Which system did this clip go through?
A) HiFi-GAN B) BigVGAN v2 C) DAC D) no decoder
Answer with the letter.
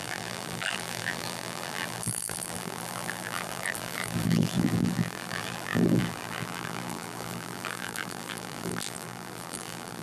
B